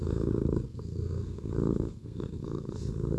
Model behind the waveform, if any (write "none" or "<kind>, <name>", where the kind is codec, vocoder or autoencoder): codec, SNAC